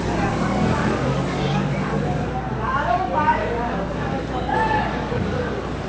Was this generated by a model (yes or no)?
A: yes